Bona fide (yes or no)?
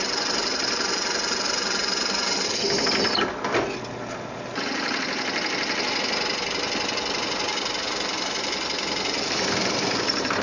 yes